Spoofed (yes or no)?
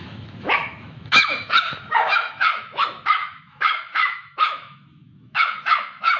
yes